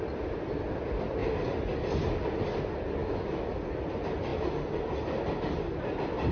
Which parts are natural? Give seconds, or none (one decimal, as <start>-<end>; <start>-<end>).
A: 0.0-3.0; 3.5-6.3